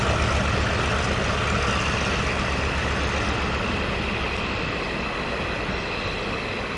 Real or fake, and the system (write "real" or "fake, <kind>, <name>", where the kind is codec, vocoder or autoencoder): real